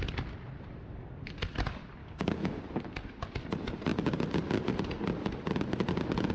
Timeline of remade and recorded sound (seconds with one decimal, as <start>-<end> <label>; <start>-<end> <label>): 0.0-2.0 recorded; 2.0-2.6 remade; 2.6-6.3 recorded